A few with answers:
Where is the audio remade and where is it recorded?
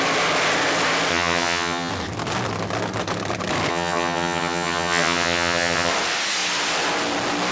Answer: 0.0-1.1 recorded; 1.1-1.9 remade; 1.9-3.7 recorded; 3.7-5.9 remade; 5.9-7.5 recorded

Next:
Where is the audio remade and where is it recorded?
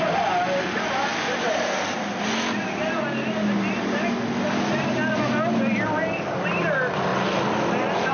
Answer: 0.0-8.1 recorded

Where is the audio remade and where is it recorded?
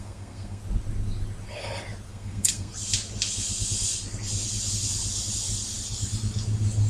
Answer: 0.0-0.6 remade; 0.6-2.1 recorded; 2.1-2.7 remade; 2.7-6.9 recorded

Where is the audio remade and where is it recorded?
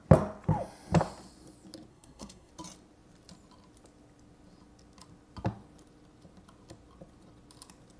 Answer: 0.0-1.9 recorded; 1.9-2.5 remade; 2.5-8.0 recorded